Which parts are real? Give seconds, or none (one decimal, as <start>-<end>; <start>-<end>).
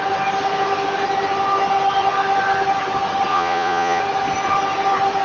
0.0-3.3; 4.0-5.2